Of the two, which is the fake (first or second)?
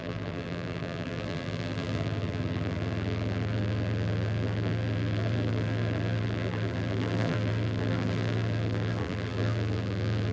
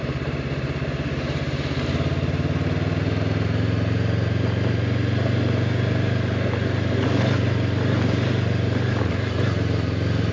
first